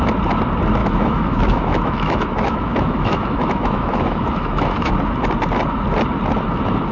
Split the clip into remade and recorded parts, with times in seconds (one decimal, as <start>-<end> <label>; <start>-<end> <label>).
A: 0.0-0.8 recorded; 0.8-4.9 remade; 4.9-6.9 recorded